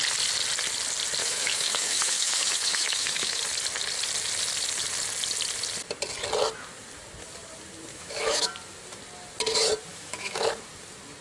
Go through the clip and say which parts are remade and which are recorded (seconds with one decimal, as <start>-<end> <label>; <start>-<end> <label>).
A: 0.0-1.2 recorded; 1.2-3.4 remade; 3.4-7.9 recorded; 7.9-8.5 remade; 8.5-9.9 recorded; 9.9-10.5 remade; 10.5-11.2 recorded